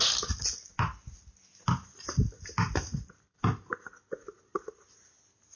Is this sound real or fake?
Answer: real